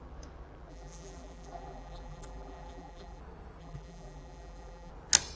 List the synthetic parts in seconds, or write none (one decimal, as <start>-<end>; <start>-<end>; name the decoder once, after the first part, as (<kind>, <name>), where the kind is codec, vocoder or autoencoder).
0.7-3.2 (vocoder, BigVGAN v2); 3.6-4.9